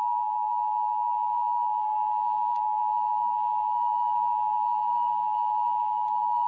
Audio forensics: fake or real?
fake